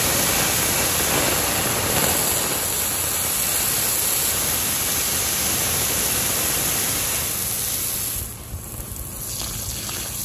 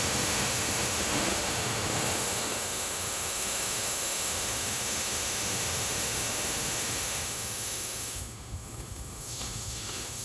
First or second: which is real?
first